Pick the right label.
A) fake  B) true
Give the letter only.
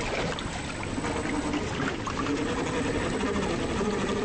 B